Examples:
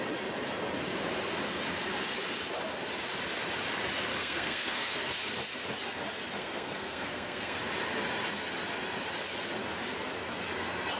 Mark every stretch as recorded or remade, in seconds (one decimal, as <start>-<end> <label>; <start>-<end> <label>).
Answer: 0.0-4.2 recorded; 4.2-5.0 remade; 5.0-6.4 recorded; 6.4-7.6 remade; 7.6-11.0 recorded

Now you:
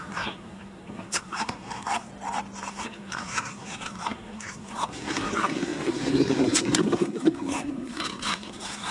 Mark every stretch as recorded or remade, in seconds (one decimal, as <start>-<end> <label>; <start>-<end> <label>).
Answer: 0.0-2.1 remade; 2.1-2.7 recorded; 2.7-8.9 remade

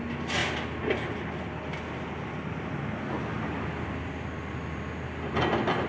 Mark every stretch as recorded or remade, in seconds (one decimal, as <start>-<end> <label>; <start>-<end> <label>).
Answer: 0.0-5.9 recorded